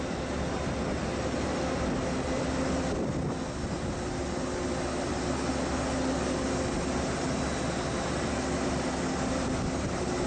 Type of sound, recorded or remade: recorded